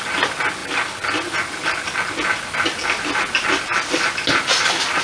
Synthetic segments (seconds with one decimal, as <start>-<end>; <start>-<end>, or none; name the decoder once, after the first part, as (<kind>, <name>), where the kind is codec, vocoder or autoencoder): none